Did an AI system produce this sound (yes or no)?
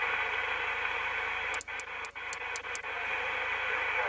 no